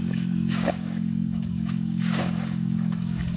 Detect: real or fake fake